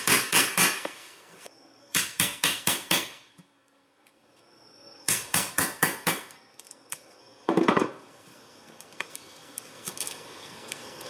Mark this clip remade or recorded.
remade